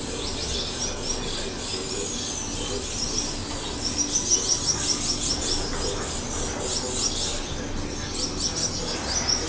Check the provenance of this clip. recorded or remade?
recorded